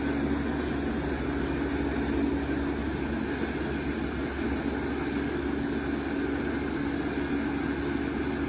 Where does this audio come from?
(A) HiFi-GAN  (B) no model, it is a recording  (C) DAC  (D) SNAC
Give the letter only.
B